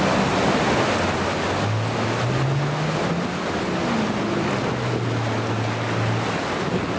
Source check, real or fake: real